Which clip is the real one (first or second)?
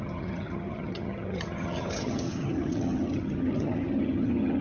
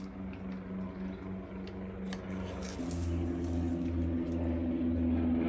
second